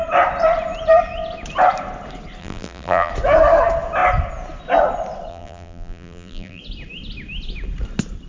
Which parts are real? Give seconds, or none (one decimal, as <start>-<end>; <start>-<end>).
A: 0.0-2.4; 3.1-5.3; 6.6-8.3